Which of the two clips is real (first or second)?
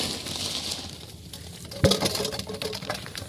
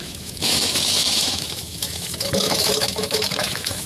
first